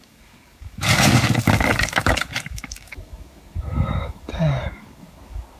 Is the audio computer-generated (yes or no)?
yes